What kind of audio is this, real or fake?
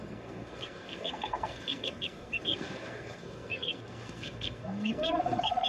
fake